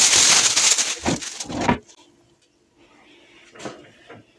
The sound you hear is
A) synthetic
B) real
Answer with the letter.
B